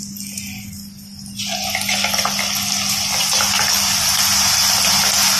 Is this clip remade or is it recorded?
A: recorded